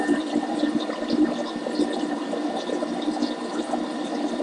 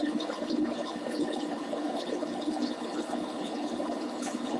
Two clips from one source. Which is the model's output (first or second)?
second